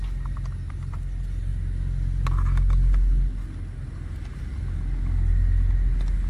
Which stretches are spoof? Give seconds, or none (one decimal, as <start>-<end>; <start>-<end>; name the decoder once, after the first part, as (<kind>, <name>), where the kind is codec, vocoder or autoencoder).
none